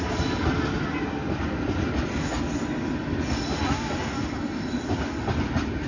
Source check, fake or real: real